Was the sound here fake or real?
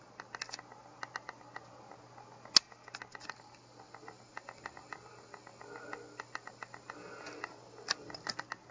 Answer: real